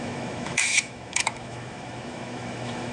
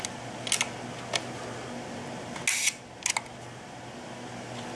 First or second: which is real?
second